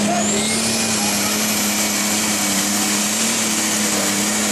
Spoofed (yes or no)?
no